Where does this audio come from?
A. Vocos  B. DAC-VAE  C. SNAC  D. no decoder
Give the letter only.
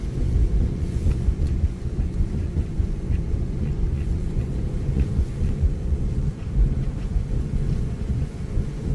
A